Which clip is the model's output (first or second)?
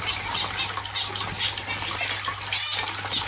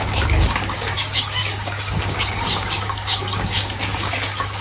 second